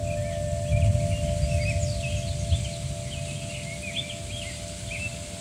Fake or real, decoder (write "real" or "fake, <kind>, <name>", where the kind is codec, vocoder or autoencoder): real